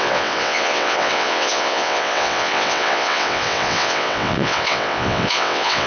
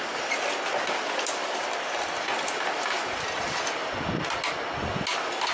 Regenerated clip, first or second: first